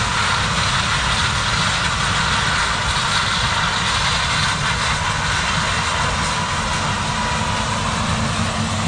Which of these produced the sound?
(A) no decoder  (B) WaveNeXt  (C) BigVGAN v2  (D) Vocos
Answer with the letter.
A